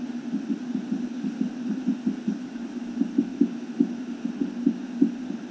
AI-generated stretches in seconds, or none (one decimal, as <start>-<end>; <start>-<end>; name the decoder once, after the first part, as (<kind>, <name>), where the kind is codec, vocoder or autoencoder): 3.3-4.1 (autoencoder, DAC-VAE)